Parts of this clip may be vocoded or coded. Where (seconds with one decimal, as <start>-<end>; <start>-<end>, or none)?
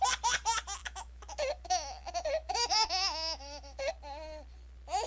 0.8-3.9